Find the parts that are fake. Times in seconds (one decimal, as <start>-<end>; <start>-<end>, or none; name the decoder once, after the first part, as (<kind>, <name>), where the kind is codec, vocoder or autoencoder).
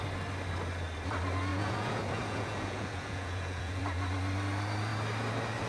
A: 1.5-3.8 (vocoder, Vocos)